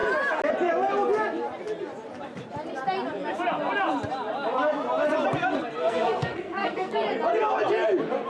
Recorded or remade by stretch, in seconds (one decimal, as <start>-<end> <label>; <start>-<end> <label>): 0.0-5.5 recorded; 5.5-6.9 remade; 6.9-8.3 recorded